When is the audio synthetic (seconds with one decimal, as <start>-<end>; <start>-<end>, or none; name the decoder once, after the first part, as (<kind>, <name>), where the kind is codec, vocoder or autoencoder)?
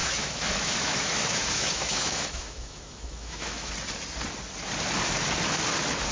0.0-3.7 (autoencoder, DAC-VAE)